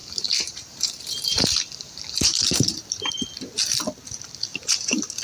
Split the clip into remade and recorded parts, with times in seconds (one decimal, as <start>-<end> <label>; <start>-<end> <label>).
0.0-3.1 remade; 3.1-4.5 recorded; 4.5-5.2 remade